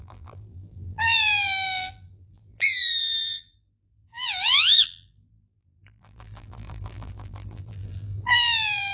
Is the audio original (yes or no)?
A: no